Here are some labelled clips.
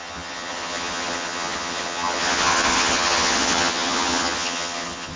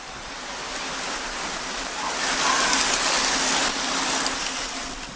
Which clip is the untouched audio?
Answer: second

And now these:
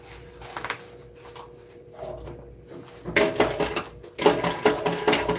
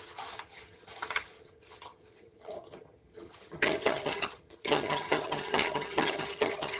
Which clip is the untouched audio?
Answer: first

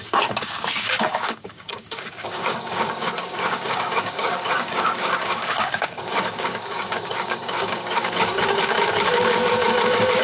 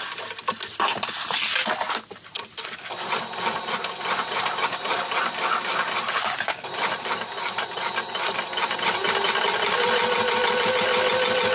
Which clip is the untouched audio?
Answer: second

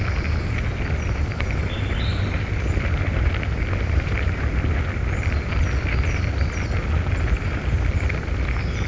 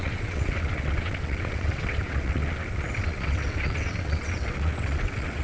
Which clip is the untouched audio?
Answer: first